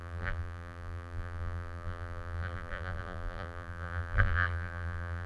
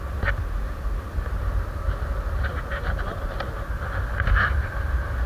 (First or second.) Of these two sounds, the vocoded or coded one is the first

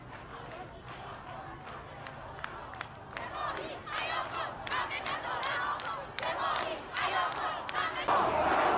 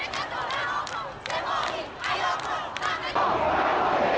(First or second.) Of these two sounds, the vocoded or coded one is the second